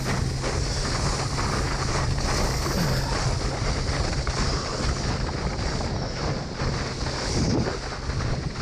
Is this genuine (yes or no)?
yes